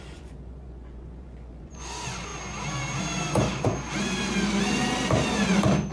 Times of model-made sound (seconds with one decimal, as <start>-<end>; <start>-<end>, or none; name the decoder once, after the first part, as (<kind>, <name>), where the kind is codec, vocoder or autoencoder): 0.0-2.3 (vocoder, Vocos)